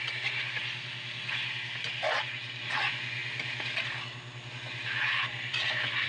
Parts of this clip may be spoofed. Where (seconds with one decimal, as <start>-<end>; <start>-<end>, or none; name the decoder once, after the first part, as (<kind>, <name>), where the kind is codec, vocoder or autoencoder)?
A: 0.0-0.6 (vocoder, Vocos); 2.2-3.2; 4.5-6.1